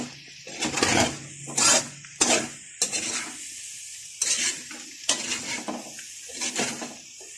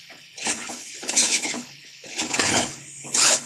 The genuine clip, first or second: first